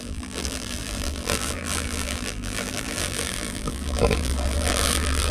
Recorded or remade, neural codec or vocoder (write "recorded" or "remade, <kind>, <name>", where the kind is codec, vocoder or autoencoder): remade, vocoder, BigVGAN v2